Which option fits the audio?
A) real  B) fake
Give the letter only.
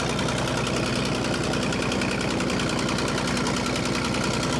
A